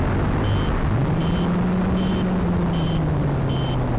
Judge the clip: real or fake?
real